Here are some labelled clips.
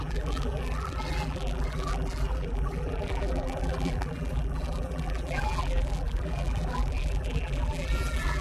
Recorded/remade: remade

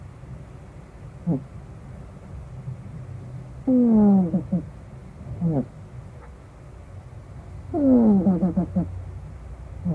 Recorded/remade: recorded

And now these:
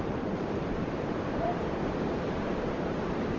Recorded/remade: remade